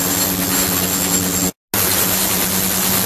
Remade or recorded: recorded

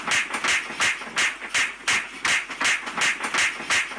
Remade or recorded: recorded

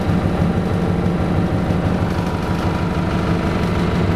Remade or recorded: recorded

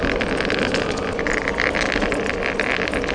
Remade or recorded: recorded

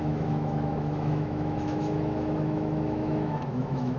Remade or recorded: remade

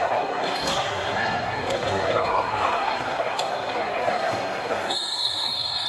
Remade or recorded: remade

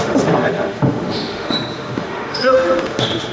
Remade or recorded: remade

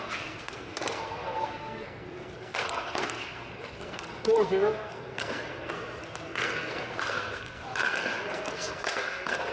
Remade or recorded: remade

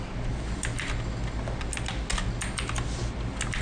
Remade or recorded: recorded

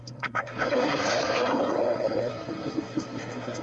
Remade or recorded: remade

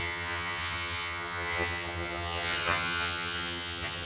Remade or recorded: remade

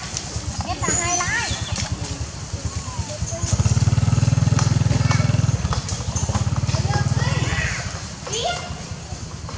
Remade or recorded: recorded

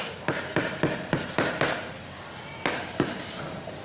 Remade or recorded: recorded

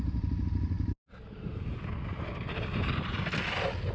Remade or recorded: recorded